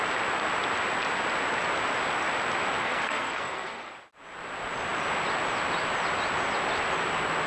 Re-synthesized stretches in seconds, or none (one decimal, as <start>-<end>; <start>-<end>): 2.8-3.9